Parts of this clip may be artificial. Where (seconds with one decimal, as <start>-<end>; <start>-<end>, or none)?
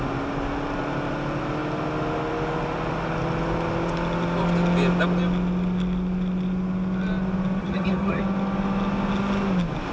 7.6-8.2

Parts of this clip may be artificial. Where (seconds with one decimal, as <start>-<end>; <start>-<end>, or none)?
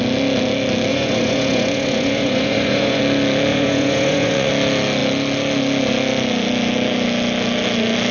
0.9-3.0; 3.5-4.5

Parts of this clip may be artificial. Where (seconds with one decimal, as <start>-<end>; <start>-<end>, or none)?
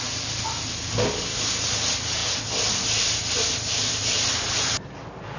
none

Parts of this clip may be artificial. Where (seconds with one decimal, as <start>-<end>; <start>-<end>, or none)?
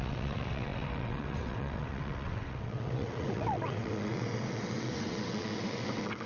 0.0-6.3